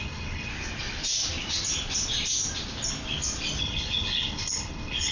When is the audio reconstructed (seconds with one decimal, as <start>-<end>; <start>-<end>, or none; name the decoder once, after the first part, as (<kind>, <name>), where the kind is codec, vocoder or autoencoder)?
0.0-0.5 (codec, HILCodec); 3.6-5.1